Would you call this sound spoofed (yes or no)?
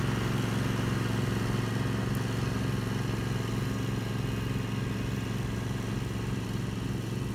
no